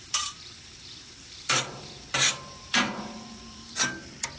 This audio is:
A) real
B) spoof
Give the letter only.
B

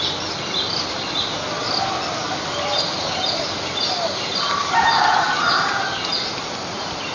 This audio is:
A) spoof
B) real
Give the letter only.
B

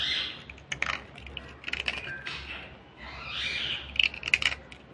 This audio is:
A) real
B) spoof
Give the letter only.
A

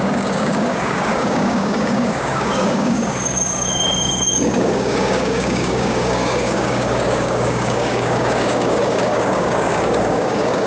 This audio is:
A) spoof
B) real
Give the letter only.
A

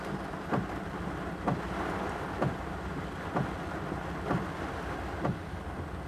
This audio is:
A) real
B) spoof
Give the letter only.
A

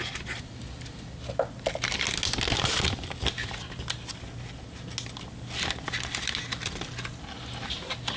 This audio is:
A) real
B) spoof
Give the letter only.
A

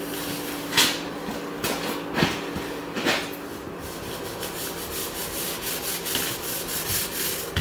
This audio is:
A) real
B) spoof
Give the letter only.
A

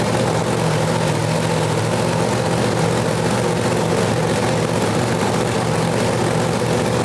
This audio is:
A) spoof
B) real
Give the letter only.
B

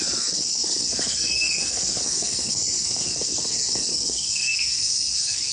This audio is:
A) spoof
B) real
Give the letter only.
A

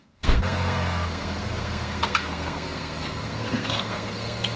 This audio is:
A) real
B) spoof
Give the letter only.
B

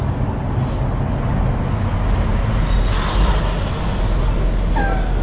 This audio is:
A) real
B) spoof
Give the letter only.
A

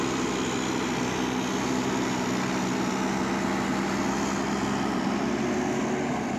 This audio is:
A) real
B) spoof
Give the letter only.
A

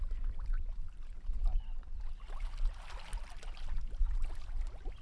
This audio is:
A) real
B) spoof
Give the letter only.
A